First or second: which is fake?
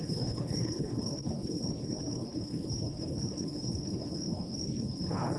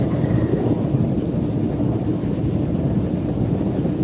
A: first